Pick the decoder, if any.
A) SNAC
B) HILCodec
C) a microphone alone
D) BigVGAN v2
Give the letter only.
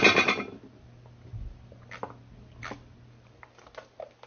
C